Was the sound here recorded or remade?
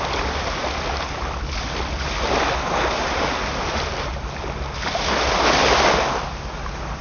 recorded